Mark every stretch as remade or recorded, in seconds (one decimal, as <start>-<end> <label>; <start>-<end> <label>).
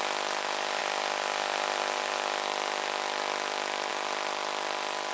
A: 0.0-5.1 recorded